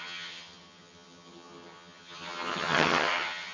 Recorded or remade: remade